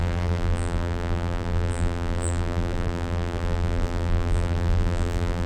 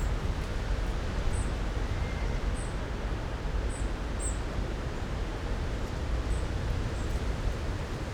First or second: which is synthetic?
first